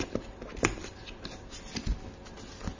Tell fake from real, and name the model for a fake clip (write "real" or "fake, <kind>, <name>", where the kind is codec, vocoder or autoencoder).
real